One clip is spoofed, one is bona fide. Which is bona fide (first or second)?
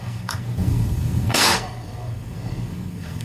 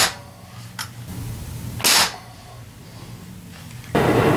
second